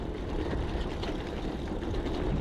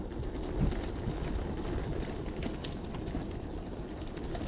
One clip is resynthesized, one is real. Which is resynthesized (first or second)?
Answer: first